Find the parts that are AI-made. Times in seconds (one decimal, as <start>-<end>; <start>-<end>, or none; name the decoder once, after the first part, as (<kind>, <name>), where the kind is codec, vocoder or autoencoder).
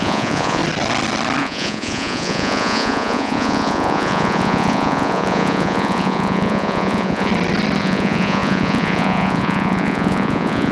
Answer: 0.0-0.6 (vocoder, Vocos); 1.4-7.3; 7.8-10.7